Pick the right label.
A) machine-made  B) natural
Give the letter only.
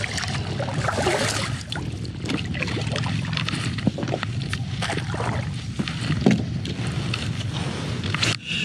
B